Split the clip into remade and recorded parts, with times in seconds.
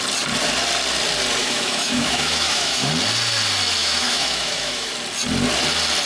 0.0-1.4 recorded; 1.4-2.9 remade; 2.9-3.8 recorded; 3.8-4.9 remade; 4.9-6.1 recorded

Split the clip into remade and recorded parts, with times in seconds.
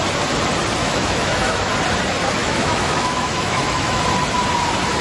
0.0-0.8 recorded; 0.8-1.7 remade; 1.7-2.4 recorded; 2.4-4.0 remade; 4.0-5.0 recorded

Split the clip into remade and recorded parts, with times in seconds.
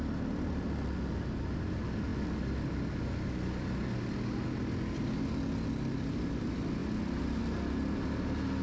0.0-8.6 recorded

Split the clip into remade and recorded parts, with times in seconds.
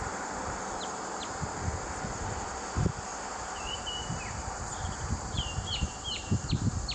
0.0-3.1 recorded; 3.1-6.5 remade; 6.5-6.9 recorded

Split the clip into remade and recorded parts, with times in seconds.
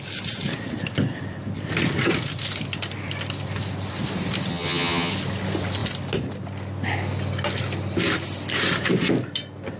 0.0-4.5 recorded; 4.5-5.1 remade; 5.1-9.8 recorded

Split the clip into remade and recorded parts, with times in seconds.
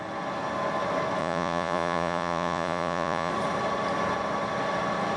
0.0-1.2 recorded; 1.2-3.3 remade; 3.3-5.2 recorded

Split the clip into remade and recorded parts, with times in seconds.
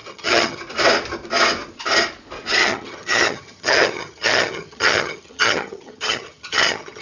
0.0-0.6 remade; 0.6-2.6 recorded; 2.6-7.0 remade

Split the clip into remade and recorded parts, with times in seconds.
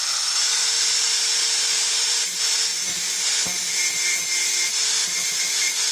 0.0-2.7 remade; 2.7-3.9 recorded; 3.9-5.9 remade